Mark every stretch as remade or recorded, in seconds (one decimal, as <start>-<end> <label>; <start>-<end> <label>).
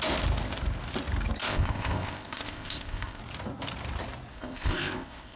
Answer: 0.0-1.4 recorded; 1.4-3.2 remade; 3.2-4.3 recorded; 4.3-5.4 remade